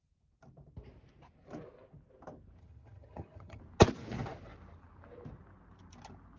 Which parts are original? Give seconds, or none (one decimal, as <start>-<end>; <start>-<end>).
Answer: 0.0-2.6; 3.6-6.4